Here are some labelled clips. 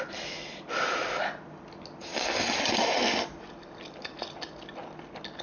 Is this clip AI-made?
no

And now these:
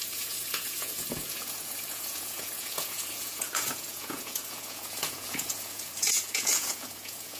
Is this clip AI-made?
yes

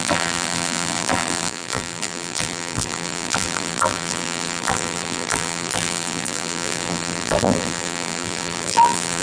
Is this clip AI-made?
yes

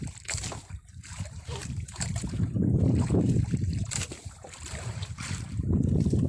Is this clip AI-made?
yes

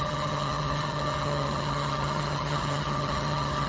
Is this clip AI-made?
yes